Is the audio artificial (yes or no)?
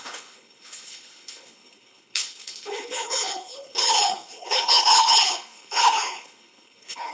yes